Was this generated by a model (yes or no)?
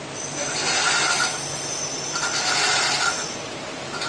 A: no